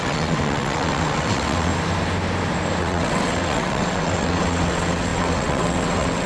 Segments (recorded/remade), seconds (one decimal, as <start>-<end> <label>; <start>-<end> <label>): 0.0-1.7 remade; 1.7-2.8 recorded; 2.8-6.3 remade